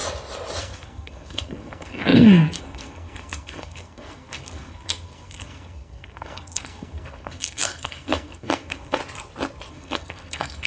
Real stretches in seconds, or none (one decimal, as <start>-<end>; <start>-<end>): 0.0-0.6; 9.0-9.7